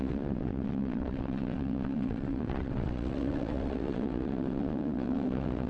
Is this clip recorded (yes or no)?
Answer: no